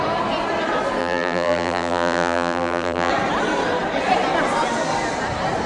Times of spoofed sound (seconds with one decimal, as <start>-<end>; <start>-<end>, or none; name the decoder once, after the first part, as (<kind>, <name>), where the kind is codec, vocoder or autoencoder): 1.0-3.1 (vocoder, BigVGAN v2)